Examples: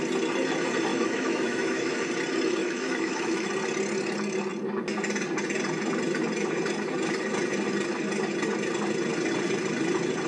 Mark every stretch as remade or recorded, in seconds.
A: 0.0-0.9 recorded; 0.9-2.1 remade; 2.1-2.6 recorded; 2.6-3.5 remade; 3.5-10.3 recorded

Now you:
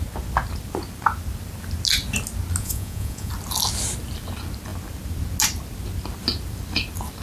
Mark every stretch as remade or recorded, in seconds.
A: 0.0-2.6 recorded; 2.6-3.3 remade; 3.3-7.2 recorded

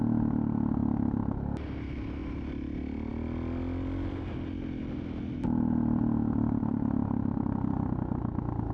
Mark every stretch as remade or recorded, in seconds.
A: 0.0-6.6 recorded; 6.6-7.4 remade; 7.4-8.7 recorded

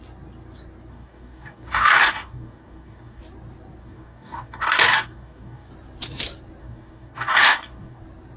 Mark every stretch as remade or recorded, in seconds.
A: 0.0-0.9 recorded; 0.9-3.2 remade; 3.2-3.8 recorded; 3.8-5.7 remade; 5.7-6.6 recorded; 6.6-8.0 remade; 8.0-8.4 recorded